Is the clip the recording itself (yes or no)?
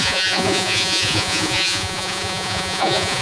no